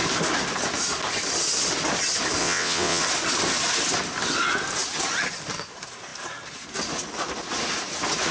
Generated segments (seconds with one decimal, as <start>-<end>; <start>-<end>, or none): 2.4-3.0